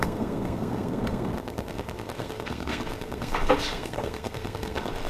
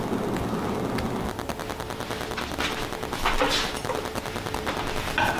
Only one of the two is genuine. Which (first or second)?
second